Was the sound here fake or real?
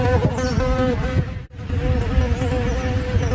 real